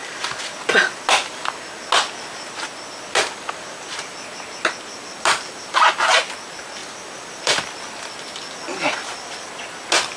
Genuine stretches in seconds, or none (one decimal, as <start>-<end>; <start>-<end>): 0.0-6.8; 8.1-10.2